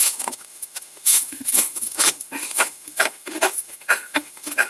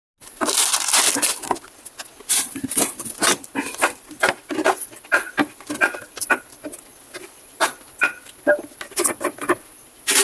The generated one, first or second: first